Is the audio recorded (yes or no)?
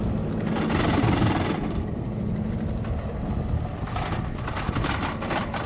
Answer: yes